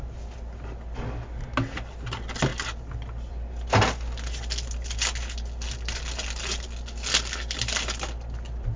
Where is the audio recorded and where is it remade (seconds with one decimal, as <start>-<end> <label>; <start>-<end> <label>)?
0.0-8.8 recorded